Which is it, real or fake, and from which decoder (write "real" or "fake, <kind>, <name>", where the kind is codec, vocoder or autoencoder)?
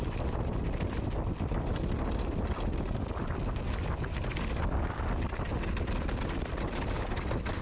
real